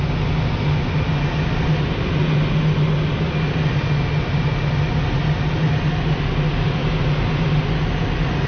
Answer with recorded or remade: recorded